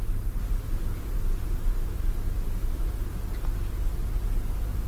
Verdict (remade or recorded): recorded